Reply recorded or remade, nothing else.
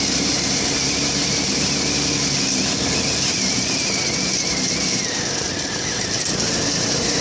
recorded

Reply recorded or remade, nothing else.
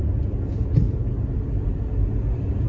recorded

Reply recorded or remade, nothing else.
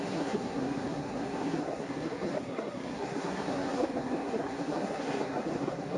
remade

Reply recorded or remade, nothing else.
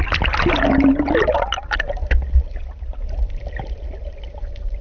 recorded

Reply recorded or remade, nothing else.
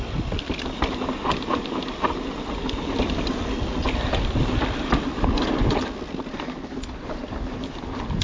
recorded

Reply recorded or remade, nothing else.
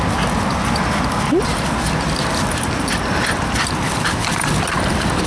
recorded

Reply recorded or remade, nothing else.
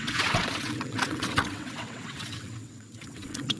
remade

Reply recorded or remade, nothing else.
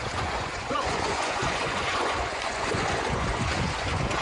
remade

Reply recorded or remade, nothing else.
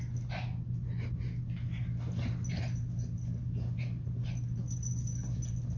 recorded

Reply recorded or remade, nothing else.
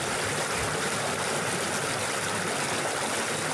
recorded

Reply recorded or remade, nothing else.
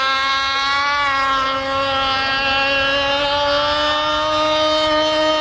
recorded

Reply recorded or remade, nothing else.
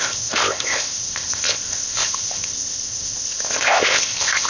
remade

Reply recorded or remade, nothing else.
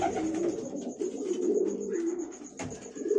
recorded